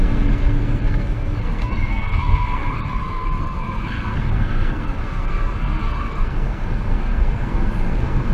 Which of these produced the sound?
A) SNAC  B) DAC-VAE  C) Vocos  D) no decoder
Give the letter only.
A